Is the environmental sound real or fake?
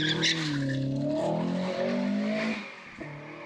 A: real